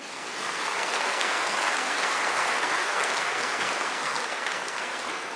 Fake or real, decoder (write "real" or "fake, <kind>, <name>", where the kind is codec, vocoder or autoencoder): fake, codec, SNAC